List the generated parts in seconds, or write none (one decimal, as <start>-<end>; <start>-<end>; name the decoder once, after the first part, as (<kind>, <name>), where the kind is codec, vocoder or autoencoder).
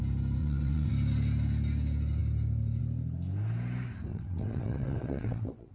0.4-0.9 (vocoder, WaveNeXt); 4.1-5.7